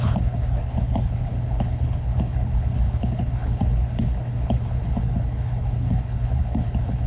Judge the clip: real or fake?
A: fake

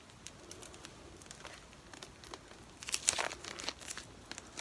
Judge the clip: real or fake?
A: real